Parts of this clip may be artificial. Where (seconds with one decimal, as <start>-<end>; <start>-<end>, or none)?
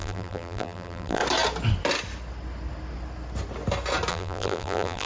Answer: 0.0-1.2; 4.1-5.1